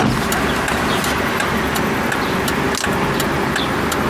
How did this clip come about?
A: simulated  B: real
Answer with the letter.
B